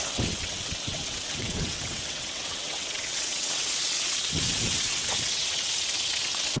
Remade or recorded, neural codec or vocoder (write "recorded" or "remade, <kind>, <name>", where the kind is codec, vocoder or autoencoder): remade, vocoder, WaveNeXt